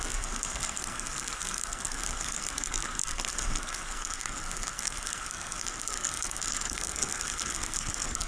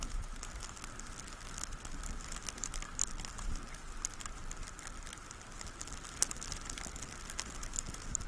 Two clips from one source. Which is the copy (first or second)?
first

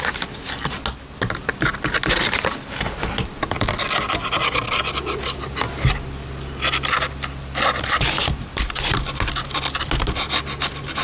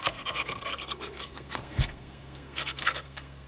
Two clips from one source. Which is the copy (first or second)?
second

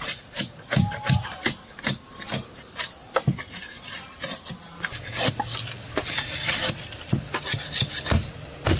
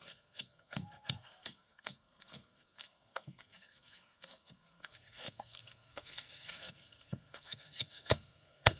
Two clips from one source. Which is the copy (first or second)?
second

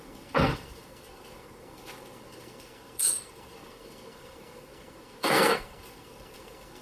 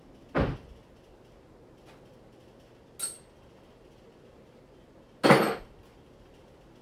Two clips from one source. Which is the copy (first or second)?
first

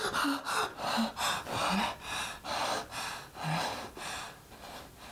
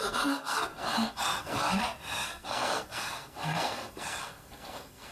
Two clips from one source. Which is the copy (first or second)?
second